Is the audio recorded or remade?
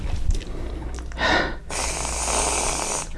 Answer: recorded